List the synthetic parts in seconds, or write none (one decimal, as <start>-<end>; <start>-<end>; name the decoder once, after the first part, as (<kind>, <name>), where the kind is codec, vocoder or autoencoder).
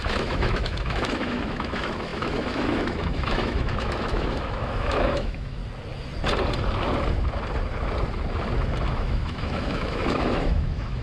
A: 0.0-5.6 (autoencoder, DAC-VAE); 8.9-11.0